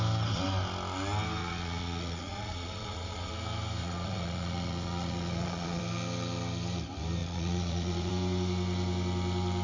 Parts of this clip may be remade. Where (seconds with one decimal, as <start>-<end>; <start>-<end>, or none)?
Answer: 1.4-3.3; 3.8-5.8; 7.2-8.1

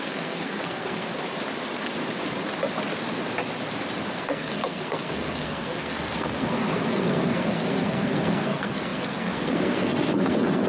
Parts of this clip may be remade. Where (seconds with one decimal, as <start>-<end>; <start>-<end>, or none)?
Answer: 0.0-1.1; 4.1-10.7

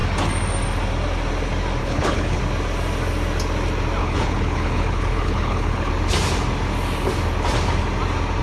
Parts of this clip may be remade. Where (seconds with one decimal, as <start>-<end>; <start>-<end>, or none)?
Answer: 1.8-2.4; 4.0-5.9

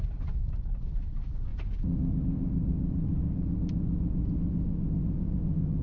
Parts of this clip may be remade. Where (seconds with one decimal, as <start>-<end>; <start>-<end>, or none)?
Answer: 0.0-1.5; 2.2-3.1

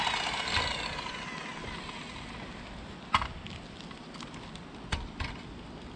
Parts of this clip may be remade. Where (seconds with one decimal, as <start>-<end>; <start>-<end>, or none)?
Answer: none

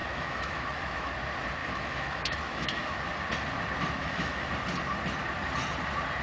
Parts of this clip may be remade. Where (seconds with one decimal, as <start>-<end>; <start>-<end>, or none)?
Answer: 0.0-1.1; 1.6-2.9; 4.0-4.5

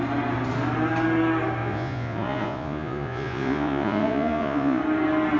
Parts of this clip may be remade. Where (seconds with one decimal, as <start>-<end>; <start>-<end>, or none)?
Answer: 1.6-4.8